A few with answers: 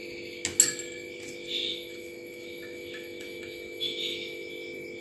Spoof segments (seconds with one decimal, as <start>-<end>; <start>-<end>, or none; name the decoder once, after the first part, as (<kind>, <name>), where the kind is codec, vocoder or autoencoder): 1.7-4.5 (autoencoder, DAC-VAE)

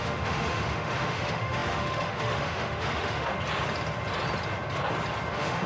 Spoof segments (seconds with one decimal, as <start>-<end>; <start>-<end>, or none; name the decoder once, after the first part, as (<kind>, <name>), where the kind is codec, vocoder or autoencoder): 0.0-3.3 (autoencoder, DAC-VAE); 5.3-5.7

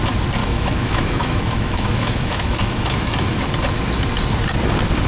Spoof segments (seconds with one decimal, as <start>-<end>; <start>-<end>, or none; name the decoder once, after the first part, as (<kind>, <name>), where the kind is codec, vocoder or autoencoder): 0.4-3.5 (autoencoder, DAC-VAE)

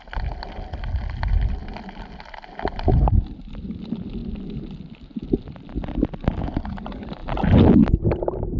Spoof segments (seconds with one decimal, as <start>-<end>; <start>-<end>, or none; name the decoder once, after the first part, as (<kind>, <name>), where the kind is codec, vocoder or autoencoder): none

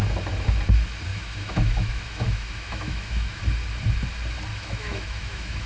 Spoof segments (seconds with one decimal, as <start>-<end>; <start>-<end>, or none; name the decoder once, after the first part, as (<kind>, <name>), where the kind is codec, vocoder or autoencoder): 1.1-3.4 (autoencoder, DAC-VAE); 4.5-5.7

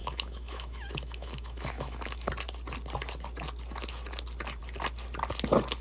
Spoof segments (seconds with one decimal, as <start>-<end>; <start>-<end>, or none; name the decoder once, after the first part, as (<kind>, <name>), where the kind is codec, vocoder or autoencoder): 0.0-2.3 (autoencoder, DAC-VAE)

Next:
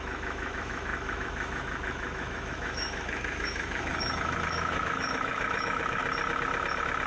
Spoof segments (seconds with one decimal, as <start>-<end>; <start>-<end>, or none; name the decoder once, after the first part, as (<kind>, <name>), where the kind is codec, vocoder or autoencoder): 0.0-6.0 (autoencoder, DAC-VAE)

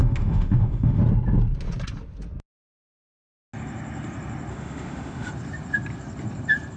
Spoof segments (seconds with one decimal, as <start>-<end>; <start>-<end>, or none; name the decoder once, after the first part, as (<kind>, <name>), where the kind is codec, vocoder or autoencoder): 0.0-1.0 (autoencoder, DAC-VAE); 4.5-5.3